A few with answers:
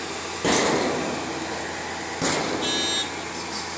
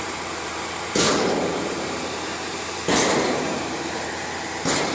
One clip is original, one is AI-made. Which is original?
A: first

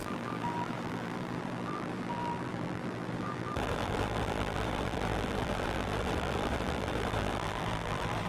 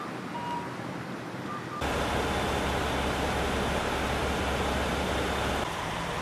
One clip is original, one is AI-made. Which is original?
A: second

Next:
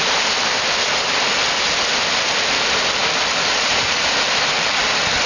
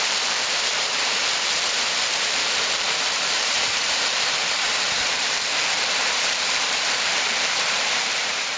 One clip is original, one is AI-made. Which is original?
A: first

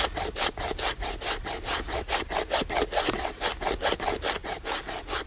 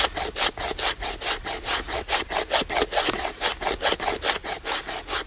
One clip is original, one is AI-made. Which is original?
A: second